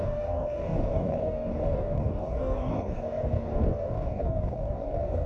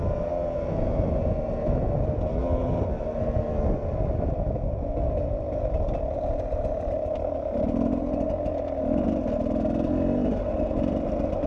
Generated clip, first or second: first